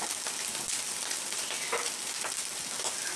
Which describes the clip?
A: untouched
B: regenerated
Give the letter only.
A